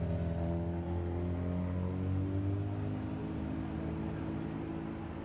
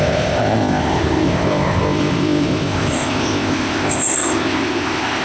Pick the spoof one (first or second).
second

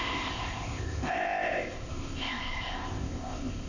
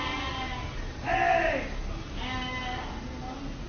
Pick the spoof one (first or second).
first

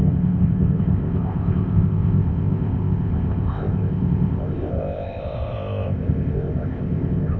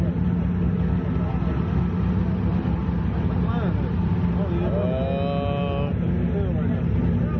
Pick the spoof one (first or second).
first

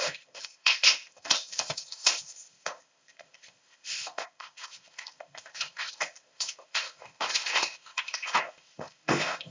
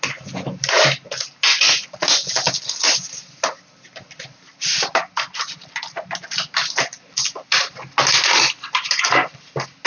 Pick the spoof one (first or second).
first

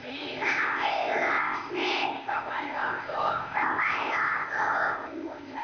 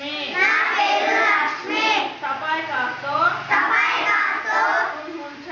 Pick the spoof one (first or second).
first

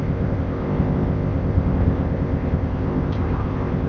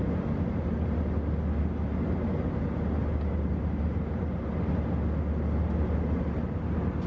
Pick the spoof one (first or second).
first